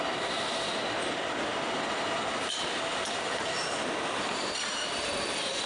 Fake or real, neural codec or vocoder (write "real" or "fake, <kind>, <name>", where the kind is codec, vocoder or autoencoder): real